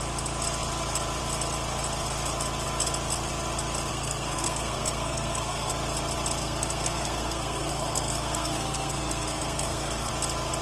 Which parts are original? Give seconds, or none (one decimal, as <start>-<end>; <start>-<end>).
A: 0.0-3.9; 5.7-6.4; 10.1-10.6